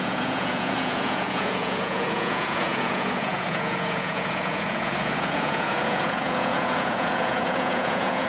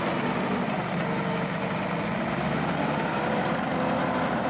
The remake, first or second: first